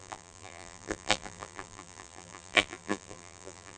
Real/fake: fake